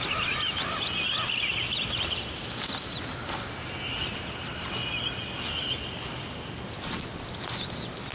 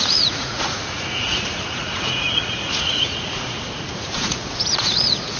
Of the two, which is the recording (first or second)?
first